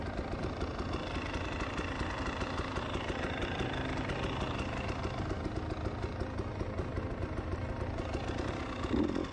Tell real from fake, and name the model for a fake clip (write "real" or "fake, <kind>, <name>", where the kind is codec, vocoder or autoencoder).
real